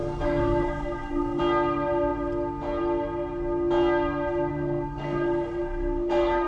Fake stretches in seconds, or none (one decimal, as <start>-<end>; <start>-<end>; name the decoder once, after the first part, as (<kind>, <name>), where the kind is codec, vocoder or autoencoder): 0.0-1.4 (codec, SNAC); 4.5-6.5